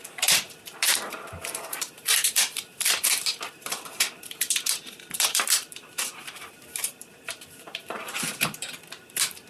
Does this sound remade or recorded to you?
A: remade